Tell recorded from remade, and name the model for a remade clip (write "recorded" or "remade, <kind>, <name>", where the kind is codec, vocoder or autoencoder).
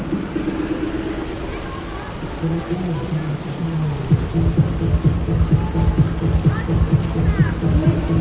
recorded